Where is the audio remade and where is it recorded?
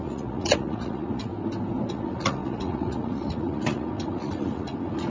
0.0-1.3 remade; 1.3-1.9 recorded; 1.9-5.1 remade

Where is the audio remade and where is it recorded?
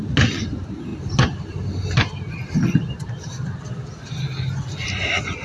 0.0-5.4 recorded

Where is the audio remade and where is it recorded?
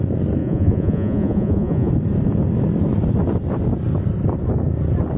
0.0-0.4 recorded; 0.4-1.9 remade; 1.9-5.2 recorded